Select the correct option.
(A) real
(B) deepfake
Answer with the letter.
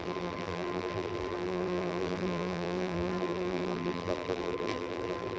B